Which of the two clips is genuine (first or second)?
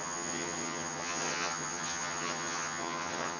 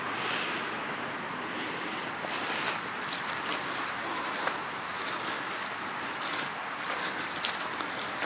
second